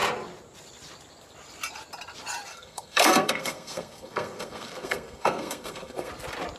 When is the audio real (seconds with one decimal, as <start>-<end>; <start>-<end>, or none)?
0.0-2.5; 6.1-6.6